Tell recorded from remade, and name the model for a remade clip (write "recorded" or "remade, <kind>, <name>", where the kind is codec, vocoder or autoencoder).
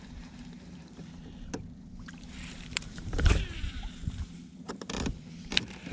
remade, vocoder, BigVGAN v2